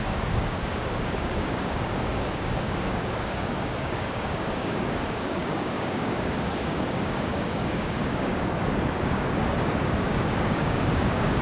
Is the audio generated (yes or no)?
yes